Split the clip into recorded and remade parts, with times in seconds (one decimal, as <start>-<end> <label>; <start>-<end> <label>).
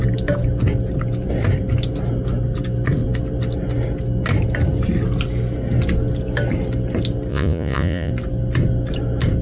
0.0-7.3 recorded; 7.3-8.1 remade; 8.1-9.4 recorded